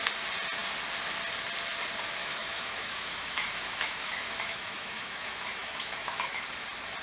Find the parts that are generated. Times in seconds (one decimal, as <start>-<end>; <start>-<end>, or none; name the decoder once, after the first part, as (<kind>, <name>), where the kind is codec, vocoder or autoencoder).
2.2-6.4 (autoencoder, DAC-VAE)